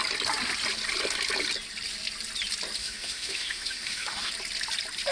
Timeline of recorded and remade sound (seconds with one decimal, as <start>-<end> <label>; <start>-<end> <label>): 0.0-2.8 recorded; 2.8-4.3 remade; 4.3-5.1 recorded